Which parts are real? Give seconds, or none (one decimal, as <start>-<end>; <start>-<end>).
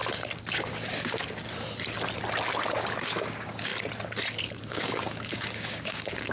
0.0-0.5; 1.2-3.0; 3.7-4.6